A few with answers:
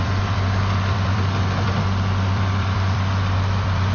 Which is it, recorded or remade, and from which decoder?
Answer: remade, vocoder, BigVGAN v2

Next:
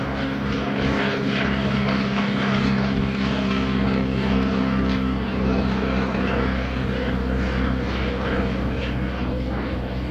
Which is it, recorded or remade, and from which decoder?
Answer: remade, codec, DAC